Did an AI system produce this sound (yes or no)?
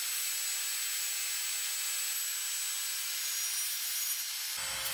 no